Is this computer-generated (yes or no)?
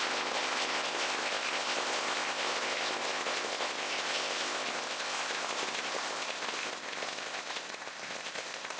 yes